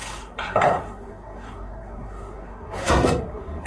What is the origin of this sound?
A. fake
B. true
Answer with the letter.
A